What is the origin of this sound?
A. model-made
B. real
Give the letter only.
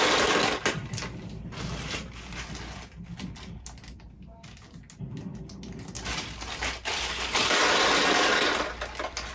B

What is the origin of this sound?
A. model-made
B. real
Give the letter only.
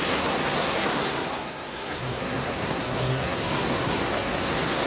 A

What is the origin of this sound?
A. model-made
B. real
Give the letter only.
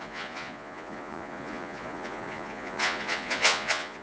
A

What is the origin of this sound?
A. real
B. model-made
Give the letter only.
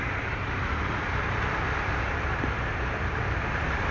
A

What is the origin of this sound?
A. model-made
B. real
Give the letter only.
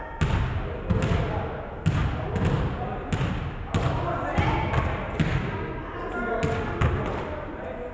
B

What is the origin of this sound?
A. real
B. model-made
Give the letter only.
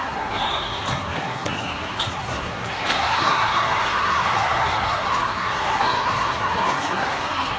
B